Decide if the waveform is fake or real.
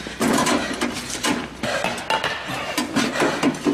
real